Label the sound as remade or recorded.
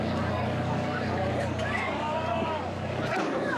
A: remade